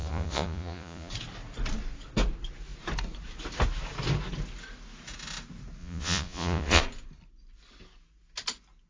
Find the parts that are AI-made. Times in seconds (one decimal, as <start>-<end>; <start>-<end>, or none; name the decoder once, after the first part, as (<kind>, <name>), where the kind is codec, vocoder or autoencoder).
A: 0.0-1.1 (vocoder, Vocos); 5.8-6.8